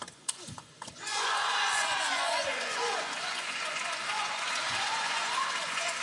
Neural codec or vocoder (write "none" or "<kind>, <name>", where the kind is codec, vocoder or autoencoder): vocoder, Vocos